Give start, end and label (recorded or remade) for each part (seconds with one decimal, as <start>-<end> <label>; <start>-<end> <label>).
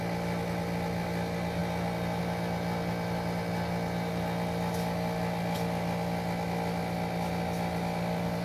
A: 0.0-8.4 recorded